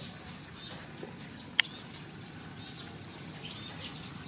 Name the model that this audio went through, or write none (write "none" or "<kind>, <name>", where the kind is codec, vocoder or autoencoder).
none